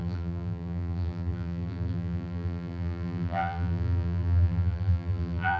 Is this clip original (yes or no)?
no